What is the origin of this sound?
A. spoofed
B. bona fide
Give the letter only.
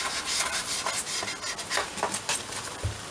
B